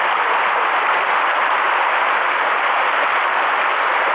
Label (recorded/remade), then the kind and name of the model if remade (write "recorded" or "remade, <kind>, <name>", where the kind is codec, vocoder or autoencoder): recorded